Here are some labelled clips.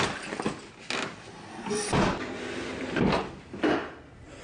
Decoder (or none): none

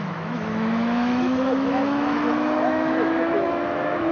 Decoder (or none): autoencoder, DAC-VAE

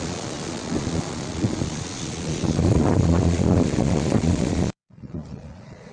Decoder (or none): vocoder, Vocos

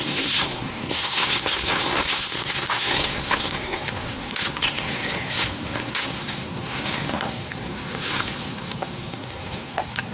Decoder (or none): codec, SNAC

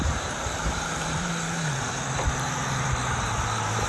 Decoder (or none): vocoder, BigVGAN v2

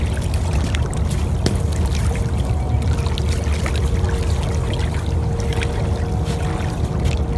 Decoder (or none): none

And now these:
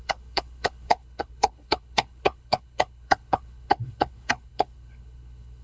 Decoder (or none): codec, HILCodec